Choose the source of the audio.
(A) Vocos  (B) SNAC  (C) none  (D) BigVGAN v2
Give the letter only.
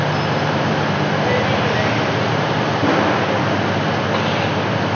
C